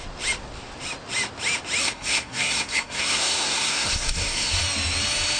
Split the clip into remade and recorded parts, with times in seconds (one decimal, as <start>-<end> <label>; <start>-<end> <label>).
0.0-1.8 recorded; 1.8-4.6 remade; 4.6-5.4 recorded